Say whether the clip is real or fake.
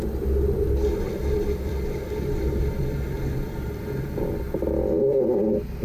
real